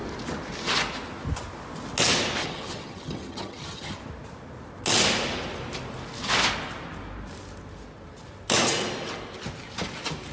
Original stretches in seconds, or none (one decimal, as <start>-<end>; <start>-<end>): 0.0-2.4; 4.0-10.3